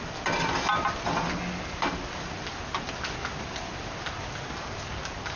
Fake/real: real